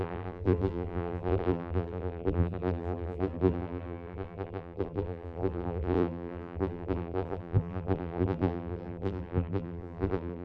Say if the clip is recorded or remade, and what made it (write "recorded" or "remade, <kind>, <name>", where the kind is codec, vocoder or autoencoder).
remade, vocoder, BigVGAN v2